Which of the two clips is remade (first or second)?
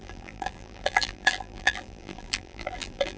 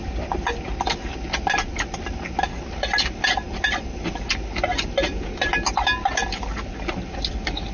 first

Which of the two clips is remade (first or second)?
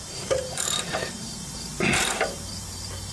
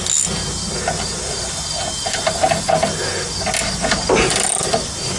first